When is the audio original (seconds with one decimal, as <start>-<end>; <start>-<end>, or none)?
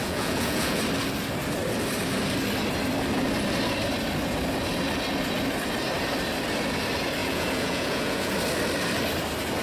0.8-7.2; 8.3-9.6